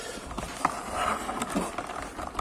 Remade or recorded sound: recorded